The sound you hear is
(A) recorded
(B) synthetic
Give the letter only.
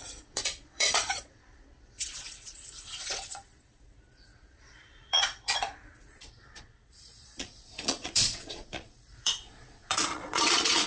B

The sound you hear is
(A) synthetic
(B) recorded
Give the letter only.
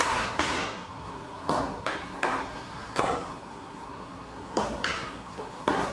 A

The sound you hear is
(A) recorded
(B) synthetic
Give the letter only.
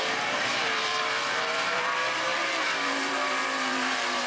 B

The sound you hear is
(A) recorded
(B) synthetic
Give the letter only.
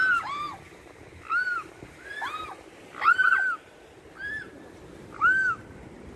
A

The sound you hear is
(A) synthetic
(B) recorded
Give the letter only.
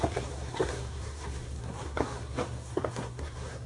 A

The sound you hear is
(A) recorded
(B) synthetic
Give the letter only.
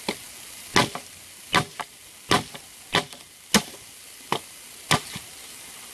A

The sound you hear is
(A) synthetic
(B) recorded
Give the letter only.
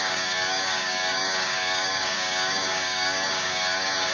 A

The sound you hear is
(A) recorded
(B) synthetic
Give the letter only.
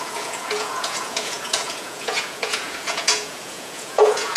B